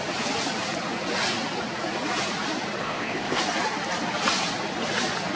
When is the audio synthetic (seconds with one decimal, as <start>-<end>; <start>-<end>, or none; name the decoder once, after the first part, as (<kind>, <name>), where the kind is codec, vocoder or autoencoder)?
2.8-3.4 (codec, ZipCodec)